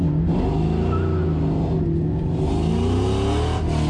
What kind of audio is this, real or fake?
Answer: real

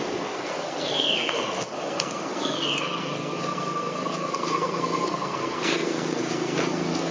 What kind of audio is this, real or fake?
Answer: fake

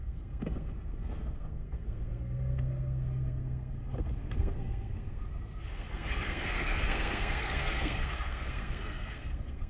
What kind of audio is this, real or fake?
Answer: fake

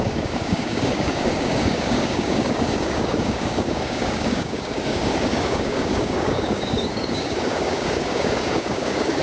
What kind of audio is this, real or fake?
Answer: fake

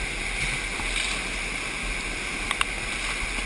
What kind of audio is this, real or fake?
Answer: real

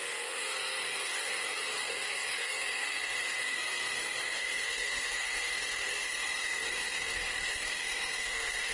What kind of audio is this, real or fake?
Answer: fake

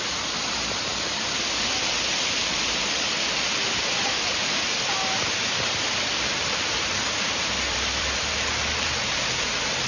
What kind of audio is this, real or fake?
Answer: fake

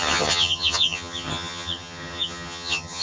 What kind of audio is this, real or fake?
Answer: fake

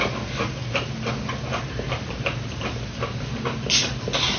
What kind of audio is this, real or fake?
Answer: real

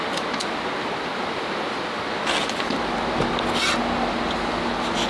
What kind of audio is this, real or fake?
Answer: real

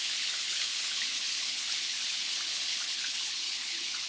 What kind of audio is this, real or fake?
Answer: fake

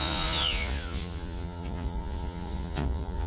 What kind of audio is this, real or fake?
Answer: fake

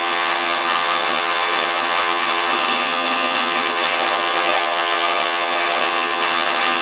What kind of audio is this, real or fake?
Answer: fake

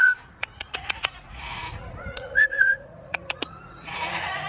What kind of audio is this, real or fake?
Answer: fake